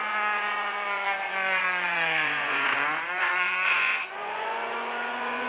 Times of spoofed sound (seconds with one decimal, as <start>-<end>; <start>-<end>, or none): 0.0-5.5